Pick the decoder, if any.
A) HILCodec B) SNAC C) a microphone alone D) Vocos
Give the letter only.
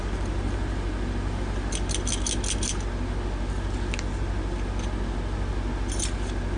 C